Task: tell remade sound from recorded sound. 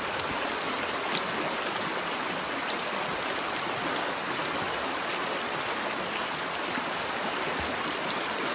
recorded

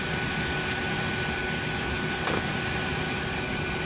recorded